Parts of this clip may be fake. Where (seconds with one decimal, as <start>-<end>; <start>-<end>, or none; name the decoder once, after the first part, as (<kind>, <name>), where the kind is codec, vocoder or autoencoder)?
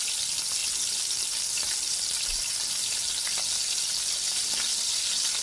none